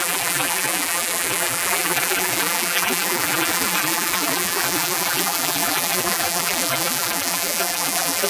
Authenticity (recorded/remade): remade